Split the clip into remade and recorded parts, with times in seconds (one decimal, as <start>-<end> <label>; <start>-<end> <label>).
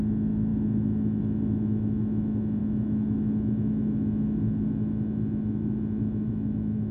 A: 0.0-6.9 recorded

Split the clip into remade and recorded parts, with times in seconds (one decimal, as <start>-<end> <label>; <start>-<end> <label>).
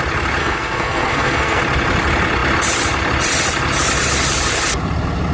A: 0.0-0.4 recorded; 0.4-1.6 remade; 1.6-5.3 recorded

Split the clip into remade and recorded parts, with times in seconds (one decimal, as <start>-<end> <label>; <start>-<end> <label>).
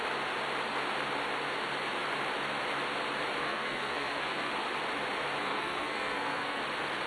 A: 0.0-3.4 recorded; 3.4-4.5 remade; 4.5-5.4 recorded; 5.4-6.6 remade; 6.6-7.1 recorded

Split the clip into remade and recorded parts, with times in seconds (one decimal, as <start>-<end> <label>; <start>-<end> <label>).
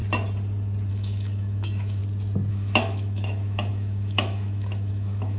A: 0.0-0.9 recorded; 0.9-2.0 remade; 2.0-2.5 recorded; 2.5-5.4 remade